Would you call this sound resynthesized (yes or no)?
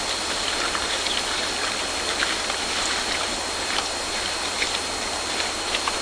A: no